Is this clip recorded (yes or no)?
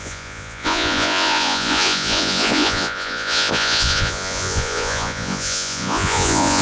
no